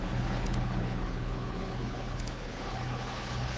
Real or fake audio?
fake